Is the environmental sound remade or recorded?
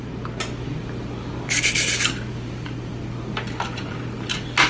recorded